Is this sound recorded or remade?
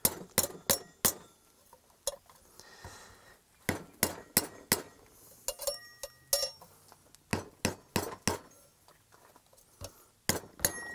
recorded